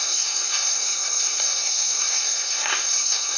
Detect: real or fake fake